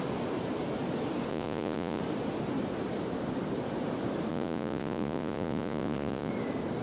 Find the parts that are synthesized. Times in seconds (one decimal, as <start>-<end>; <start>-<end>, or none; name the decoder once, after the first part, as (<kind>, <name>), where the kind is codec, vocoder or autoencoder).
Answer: 1.3-2.0 (vocoder, Vocos); 4.3-6.3